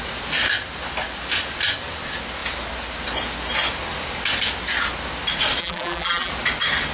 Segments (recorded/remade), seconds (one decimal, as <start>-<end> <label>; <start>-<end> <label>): 0.0-5.6 recorded; 5.6-6.3 remade; 6.3-6.9 recorded

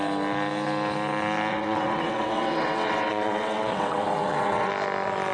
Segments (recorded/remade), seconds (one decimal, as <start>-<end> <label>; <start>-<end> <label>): 0.0-1.5 recorded; 1.5-4.7 remade; 4.7-5.3 recorded